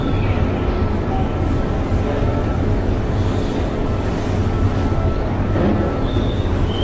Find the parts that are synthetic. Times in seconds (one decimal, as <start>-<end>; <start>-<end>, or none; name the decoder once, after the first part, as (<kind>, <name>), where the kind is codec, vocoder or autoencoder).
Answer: 0.0-6.8 (codec, DAC)